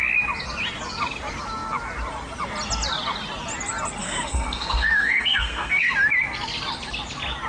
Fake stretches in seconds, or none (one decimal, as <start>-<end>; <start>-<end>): 4.0-5.9